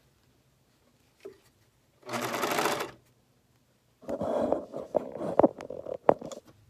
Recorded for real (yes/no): yes